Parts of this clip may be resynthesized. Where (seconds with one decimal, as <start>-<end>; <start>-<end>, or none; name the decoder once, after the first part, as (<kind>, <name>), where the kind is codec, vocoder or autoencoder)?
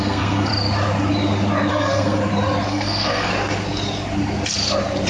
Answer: 0.0-0.5 (codec, SNAC); 1.7-2.2; 2.7-3.3